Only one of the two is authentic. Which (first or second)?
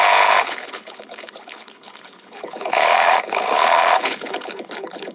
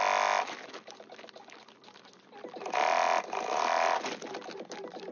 second